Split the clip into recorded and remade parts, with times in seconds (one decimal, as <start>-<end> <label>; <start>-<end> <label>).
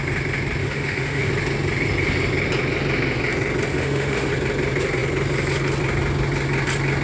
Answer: 0.0-0.6 recorded; 0.6-1.3 remade; 1.3-3.7 recorded; 3.7-4.3 remade; 4.3-7.0 recorded